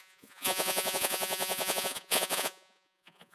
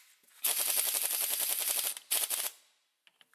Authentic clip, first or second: second